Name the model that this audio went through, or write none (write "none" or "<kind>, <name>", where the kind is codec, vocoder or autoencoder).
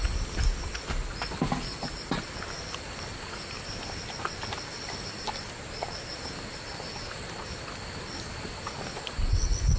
none